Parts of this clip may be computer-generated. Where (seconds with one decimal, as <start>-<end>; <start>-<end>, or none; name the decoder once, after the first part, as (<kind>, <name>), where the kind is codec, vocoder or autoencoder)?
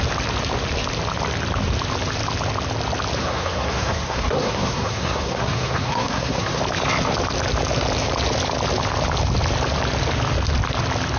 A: 3.2-6.6 (codec, SNAC)